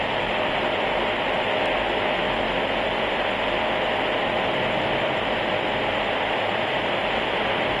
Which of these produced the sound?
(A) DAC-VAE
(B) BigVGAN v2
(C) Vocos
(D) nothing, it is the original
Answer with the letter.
D